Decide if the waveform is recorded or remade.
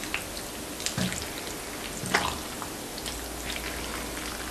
recorded